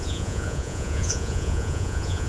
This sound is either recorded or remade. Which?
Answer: remade